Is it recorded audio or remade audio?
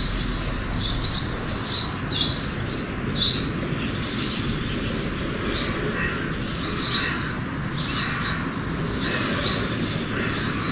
recorded